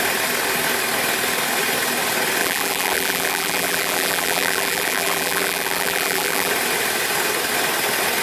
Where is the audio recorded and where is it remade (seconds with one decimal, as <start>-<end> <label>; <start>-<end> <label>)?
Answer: 0.0-2.4 recorded; 2.4-6.5 remade; 6.5-8.2 recorded